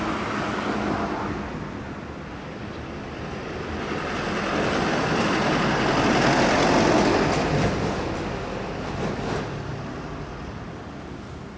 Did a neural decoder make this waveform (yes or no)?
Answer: no